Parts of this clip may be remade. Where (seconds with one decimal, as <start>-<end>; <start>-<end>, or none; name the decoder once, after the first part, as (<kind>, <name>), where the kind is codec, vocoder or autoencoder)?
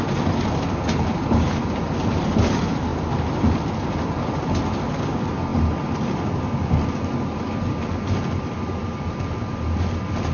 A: none